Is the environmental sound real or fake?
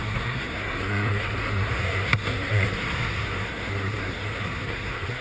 fake